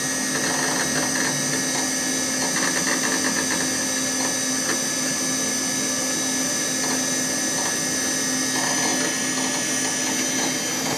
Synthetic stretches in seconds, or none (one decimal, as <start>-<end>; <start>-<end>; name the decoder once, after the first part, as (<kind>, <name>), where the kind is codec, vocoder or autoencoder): none